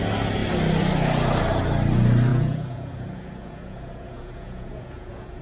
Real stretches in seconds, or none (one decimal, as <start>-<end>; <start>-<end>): 0.0-2.3